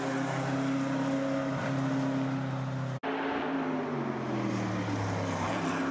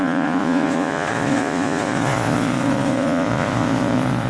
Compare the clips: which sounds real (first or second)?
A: first